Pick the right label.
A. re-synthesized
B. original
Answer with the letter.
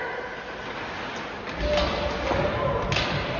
B